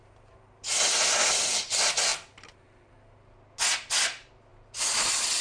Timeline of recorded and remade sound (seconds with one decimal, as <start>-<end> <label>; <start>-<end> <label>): 0.0-2.1 recorded; 2.1-2.9 remade; 2.9-5.4 recorded